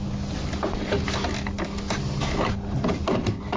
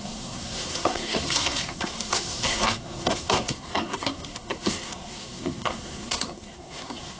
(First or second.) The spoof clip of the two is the second